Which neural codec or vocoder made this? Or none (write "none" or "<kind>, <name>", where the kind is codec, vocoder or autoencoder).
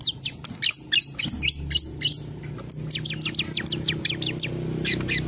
none